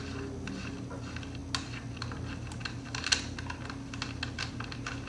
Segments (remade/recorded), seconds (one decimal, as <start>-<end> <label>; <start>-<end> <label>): 0.0-5.1 recorded